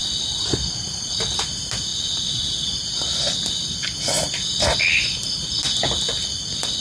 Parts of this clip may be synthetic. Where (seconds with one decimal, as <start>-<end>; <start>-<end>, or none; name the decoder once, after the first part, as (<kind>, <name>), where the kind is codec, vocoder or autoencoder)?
none